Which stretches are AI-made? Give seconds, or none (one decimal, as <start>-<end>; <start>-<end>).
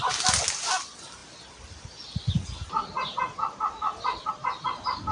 none